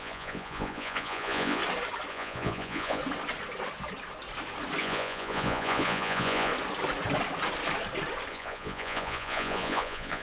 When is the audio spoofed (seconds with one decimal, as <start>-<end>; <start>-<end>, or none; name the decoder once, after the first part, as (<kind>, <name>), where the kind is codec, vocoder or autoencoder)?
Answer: 0.0-1.6 (vocoder, Vocos); 2.1-3.0; 4.8-6.5; 8.3-10.2